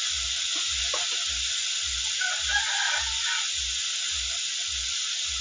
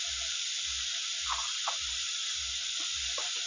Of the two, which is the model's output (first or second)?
second